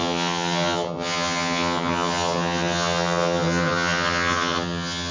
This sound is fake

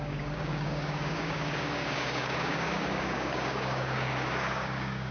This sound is fake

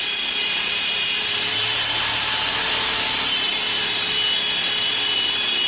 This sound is fake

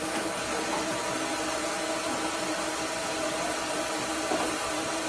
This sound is real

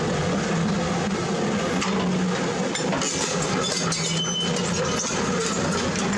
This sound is real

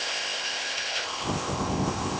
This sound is fake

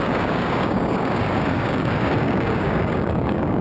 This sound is fake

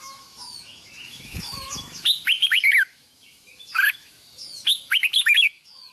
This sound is fake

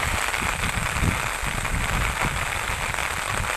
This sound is real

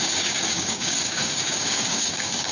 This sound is fake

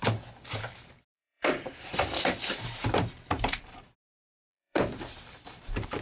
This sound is fake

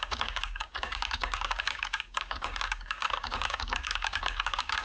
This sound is fake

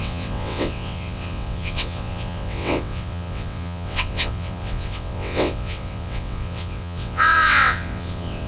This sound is fake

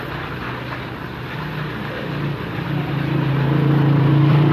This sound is fake